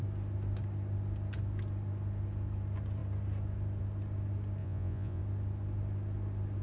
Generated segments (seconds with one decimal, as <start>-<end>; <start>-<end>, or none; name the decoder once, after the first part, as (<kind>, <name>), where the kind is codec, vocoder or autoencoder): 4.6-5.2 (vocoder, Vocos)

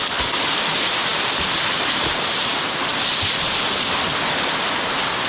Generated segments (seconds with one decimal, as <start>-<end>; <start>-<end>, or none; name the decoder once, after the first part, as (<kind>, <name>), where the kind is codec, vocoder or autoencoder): none

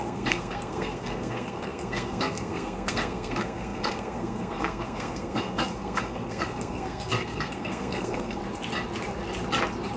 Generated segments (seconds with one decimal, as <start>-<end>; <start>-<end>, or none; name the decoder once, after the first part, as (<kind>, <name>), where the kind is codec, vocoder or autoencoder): 0.0-8.4 (codec, SNAC)

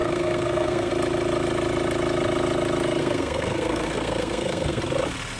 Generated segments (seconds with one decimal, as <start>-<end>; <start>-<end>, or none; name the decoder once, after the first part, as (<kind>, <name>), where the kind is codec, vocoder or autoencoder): 0.0-0.9 (codec, SNAC); 3.0-4.8

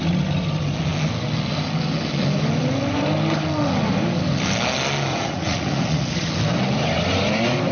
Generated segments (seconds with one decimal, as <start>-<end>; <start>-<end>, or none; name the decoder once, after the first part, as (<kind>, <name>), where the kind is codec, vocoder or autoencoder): 5.1-6.3 (vocoder, Vocos)